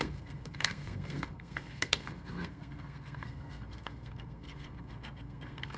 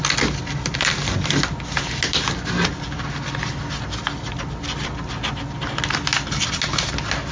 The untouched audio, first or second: second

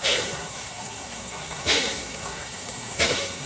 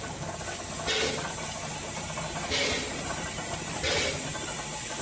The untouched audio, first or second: second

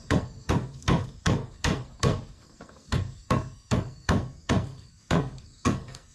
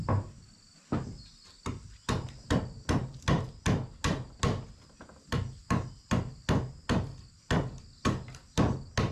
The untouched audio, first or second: second